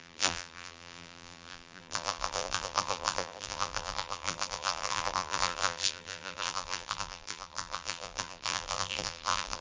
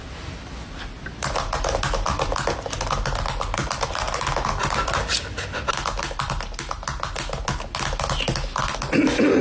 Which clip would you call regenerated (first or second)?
first